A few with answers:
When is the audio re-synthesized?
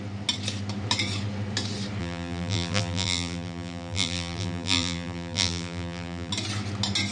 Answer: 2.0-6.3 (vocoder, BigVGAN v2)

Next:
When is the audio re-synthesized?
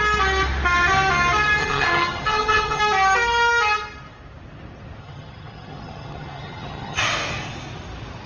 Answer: 1.6-2.8 (vocoder, HiFi-GAN); 5.0-7.0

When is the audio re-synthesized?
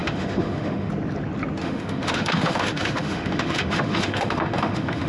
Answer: 0.0-0.9 (autoencoder, DAC-VAE); 1.6-5.1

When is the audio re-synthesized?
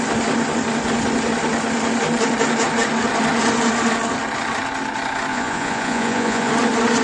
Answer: 5.3-6.5 (vocoder, Vocos)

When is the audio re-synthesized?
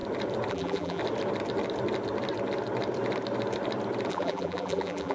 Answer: 0.5-1.0 (vocoder, BigVGAN v2); 4.1-5.1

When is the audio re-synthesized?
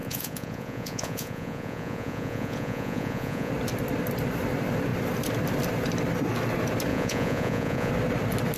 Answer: 0.0-3.5 (vocoder, Vocos); 6.9-7.9